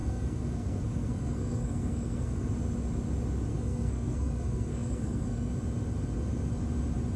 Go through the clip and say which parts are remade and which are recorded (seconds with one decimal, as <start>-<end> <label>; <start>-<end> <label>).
0.0-2.5 remade; 2.5-3.5 recorded; 3.5-5.5 remade; 5.5-7.2 recorded